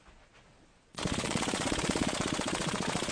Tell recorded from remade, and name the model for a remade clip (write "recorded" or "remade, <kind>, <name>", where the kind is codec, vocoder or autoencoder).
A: remade, vocoder, Vocos